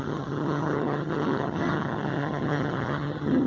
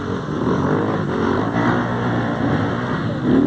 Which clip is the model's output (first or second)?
first